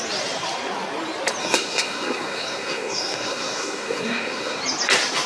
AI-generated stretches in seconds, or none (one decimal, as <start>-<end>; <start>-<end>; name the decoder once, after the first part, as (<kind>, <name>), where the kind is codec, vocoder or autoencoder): 1.4-4.6 (codec, SNAC)